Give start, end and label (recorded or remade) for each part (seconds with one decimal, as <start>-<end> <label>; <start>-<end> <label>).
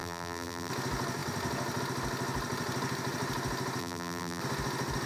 0.0-0.7 remade; 0.7-3.8 recorded; 3.8-4.4 remade; 4.4-5.1 recorded